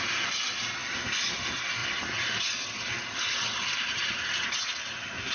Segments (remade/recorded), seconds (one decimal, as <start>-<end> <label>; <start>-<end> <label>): 0.0-1.8 recorded; 1.8-4.1 remade; 4.1-5.3 recorded

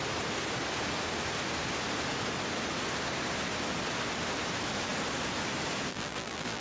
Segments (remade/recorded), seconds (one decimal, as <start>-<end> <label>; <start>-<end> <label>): 0.0-5.9 recorded; 5.9-6.6 remade

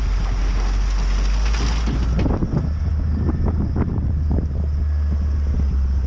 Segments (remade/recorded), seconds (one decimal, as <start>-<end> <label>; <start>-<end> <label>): 0.0-6.1 recorded

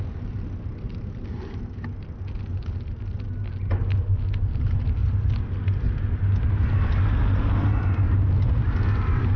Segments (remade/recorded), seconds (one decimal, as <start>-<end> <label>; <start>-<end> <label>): 0.0-9.4 recorded

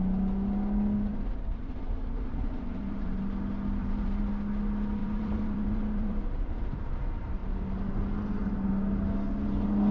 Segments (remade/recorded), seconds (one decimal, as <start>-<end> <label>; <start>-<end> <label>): 0.0-1.1 recorded; 1.1-3.2 remade; 3.2-3.8 recorded; 3.8-4.3 remade; 4.3-5.0 recorded; 5.0-6.9 remade; 6.9-9.9 recorded

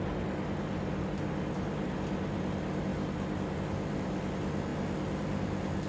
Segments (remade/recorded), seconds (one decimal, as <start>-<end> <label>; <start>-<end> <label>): 0.0-5.9 recorded

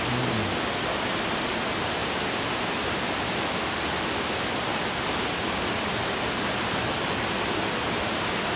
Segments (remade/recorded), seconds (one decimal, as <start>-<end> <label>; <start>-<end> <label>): 0.0-8.6 recorded